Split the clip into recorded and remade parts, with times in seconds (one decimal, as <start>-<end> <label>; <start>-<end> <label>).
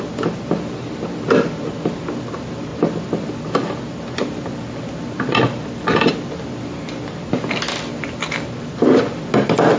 0.0-9.8 recorded